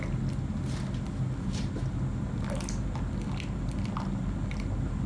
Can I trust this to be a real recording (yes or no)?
yes